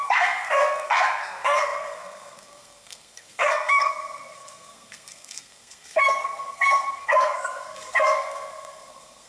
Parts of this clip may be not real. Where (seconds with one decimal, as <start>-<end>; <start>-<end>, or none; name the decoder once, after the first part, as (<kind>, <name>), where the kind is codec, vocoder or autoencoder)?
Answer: 0.0-9.3 (codec, SNAC)